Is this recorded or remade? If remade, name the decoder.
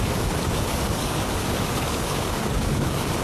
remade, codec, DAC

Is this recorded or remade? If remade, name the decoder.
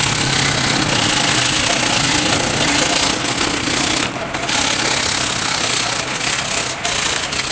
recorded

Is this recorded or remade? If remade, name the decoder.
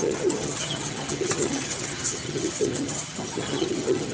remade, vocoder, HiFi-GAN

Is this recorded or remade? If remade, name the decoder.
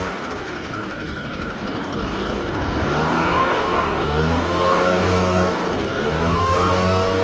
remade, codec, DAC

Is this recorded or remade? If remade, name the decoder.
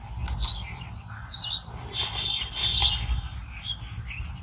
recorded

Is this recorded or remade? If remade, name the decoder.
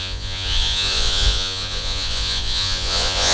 remade, vocoder, Vocos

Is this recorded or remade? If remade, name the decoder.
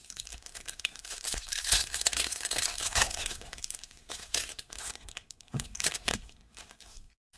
remade, codec, SNAC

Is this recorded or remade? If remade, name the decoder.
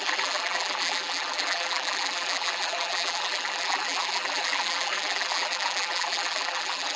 remade, vocoder, BigVGAN v2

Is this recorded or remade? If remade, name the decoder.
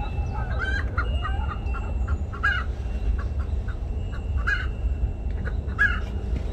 remade, vocoder, BigVGAN v2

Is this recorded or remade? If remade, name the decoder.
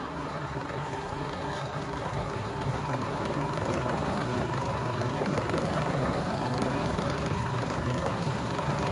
remade, codec, SNAC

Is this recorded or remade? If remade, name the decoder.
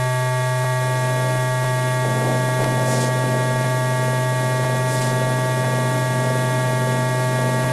recorded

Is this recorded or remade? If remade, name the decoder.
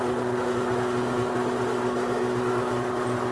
recorded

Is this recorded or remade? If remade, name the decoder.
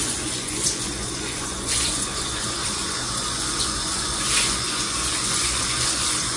remade, vocoder, Vocos